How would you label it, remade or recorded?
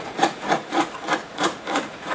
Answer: remade